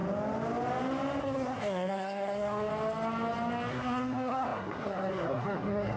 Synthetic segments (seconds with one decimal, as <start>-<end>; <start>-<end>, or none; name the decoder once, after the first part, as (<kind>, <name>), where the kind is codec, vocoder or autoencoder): 1.2-2.7 (codec, SNAC); 3.7-6.0